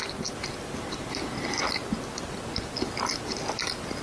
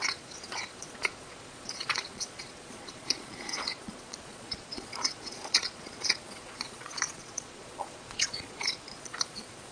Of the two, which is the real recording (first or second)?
first